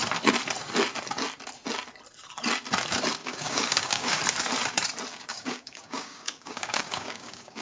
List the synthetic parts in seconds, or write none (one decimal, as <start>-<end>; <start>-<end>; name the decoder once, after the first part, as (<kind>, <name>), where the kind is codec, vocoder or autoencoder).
3.2-4.2 (codec, DAC); 5.1-7.6